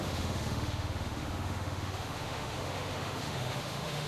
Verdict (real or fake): fake